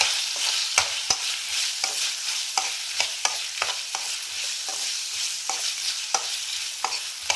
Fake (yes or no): no